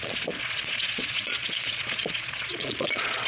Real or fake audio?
fake